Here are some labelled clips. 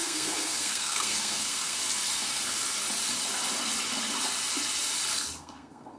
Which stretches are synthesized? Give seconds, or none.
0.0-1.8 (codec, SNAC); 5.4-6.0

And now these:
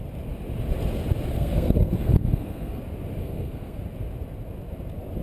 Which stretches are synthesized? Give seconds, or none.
1.3-2.8 (codec, SNAC); 3.2-3.8

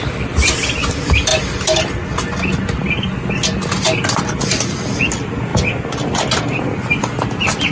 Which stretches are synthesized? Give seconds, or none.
none

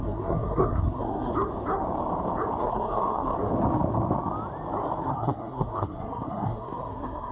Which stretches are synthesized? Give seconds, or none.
0.0-1.3 (codec, SNAC); 2.6-3.3; 5.0-7.3

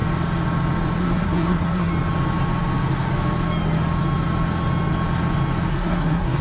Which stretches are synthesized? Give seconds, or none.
1.0-1.9 (codec, SNAC); 5.7-6.4